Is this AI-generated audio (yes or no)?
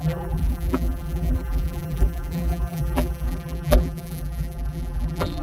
yes